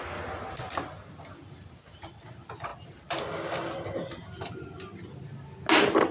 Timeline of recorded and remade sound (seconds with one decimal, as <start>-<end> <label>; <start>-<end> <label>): 0.0-6.1 recorded